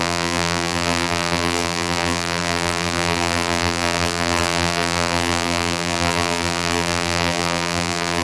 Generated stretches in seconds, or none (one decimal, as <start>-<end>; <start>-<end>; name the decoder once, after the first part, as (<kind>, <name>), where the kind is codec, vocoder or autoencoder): 0.0-8.2 (vocoder, BigVGAN v2)